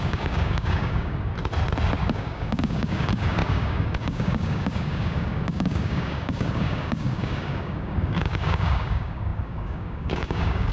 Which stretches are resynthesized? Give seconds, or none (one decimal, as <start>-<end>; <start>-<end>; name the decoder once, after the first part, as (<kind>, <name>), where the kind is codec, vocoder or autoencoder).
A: 0.0-1.3 (codec, DAC); 2.0-10.7